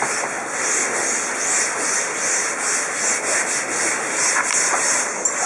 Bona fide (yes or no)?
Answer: yes